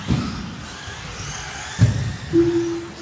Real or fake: real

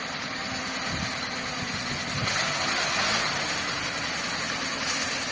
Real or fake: real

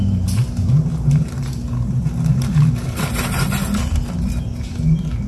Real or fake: real